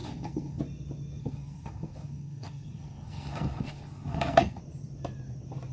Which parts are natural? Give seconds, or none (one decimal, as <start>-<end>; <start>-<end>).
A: 0.6-1.2; 4.6-5.7